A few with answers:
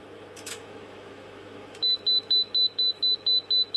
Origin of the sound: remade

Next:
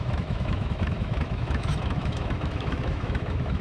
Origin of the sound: remade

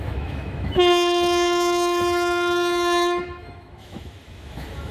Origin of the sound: remade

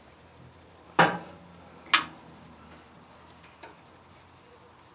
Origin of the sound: recorded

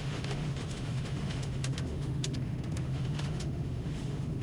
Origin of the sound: remade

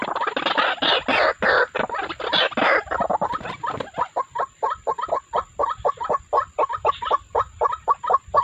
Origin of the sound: recorded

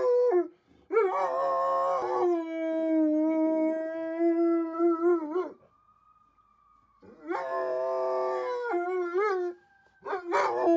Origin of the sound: recorded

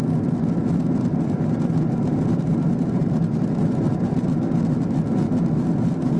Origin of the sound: recorded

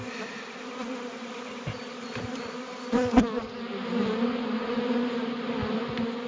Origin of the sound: recorded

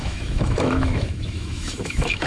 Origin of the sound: remade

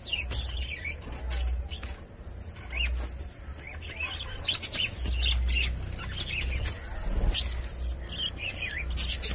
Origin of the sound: recorded